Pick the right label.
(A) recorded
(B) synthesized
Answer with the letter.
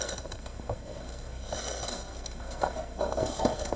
B